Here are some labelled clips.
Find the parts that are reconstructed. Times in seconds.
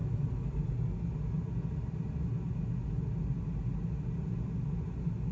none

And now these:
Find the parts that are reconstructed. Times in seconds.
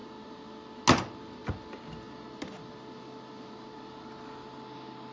none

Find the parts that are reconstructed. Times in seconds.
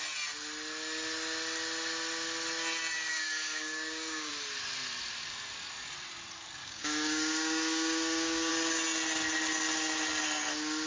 3.1-4.3; 6.6-8.5